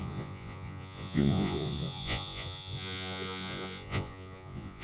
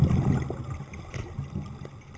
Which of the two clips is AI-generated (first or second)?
first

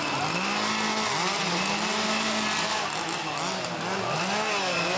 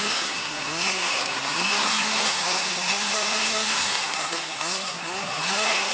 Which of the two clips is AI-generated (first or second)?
second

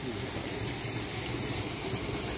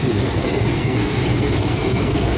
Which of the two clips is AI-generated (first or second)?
second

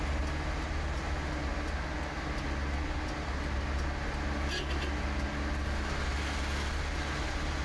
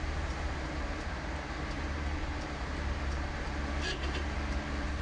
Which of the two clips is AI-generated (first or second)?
second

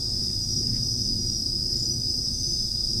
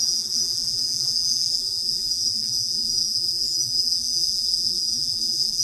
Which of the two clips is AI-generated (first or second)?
second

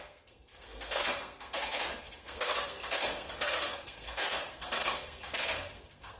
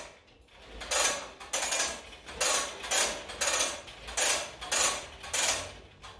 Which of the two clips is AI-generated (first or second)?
first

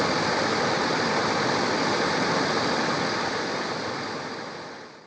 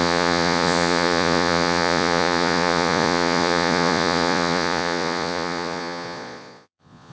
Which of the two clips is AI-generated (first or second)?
second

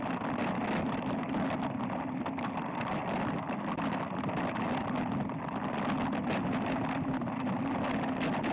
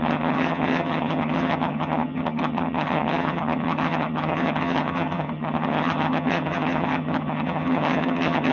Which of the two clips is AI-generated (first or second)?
second